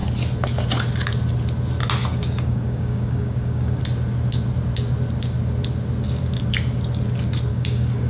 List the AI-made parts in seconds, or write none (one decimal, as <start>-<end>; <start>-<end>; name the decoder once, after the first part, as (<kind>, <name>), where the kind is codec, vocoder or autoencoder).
2.1-3.8 (codec, DAC); 7.5-8.1